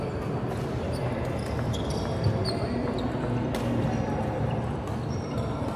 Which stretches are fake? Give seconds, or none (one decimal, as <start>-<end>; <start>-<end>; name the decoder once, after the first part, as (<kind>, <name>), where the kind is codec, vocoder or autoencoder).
none